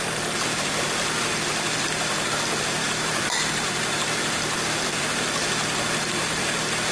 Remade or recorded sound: remade